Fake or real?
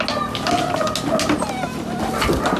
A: real